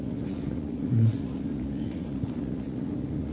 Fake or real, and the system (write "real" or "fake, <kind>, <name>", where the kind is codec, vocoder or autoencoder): fake, vocoder, Vocos